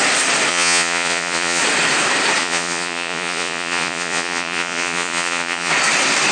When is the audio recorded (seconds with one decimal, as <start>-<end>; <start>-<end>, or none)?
0.0-0.5; 1.6-2.4; 5.7-6.3